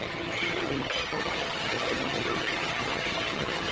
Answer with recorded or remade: remade